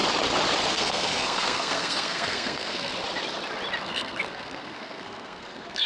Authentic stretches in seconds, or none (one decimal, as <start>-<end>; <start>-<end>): 0.0-0.7; 2.9-3.8